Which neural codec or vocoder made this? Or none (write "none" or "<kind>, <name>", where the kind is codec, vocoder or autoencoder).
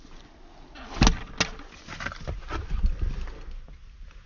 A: none